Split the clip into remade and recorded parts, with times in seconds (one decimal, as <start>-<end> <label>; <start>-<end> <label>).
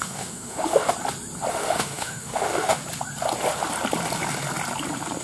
0.0-0.9 remade; 0.9-1.5 recorded; 1.5-2.8 remade; 2.8-5.2 recorded